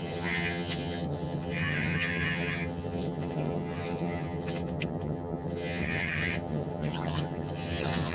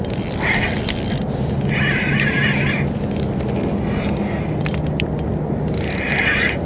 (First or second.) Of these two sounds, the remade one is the first